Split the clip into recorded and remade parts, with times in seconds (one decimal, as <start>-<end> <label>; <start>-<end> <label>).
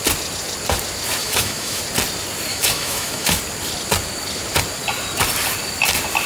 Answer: 0.0-1.2 recorded; 1.2-1.8 remade; 1.8-2.5 recorded; 2.5-3.4 remade; 3.4-6.3 recorded